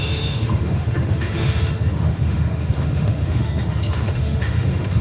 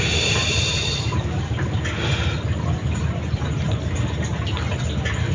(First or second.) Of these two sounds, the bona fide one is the second